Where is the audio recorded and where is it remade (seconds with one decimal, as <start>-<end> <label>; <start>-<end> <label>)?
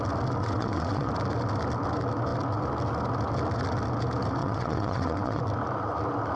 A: 0.0-0.4 recorded; 0.4-1.1 remade; 1.1-4.4 recorded; 4.4-5.4 remade; 5.4-6.4 recorded